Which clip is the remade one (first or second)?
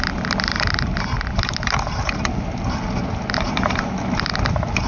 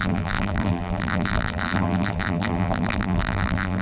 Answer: second